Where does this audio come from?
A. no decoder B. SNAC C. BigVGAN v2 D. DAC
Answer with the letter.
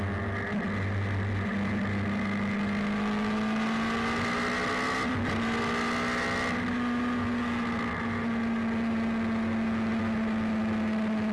A